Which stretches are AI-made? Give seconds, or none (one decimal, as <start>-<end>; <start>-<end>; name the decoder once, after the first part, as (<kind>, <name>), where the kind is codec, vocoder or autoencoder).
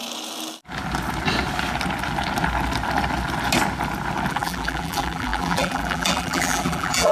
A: 4.3-7.1 (vocoder, BigVGAN v2)